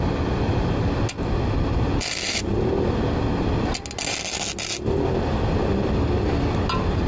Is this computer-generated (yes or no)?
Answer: no